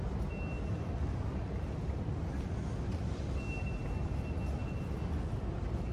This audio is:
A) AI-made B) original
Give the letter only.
B